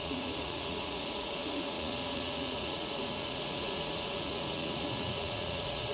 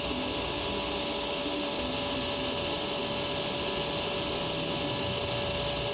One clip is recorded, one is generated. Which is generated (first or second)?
first